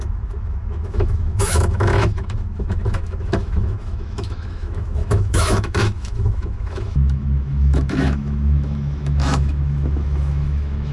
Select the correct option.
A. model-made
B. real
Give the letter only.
A